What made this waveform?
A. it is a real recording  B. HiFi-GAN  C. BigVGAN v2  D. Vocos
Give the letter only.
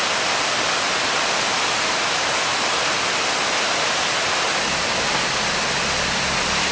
A